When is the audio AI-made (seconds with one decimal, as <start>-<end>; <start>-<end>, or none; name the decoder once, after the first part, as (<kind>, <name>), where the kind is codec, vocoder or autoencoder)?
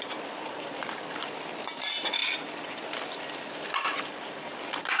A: 0.0-5.0 (vocoder, BigVGAN v2)